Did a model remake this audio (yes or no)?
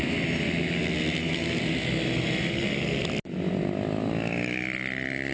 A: no